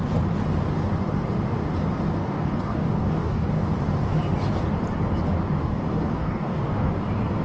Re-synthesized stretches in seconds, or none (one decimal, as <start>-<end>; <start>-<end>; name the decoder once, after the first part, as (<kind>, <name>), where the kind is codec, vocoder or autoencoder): 2.2-3.5 (codec, DAC); 5.6-6.9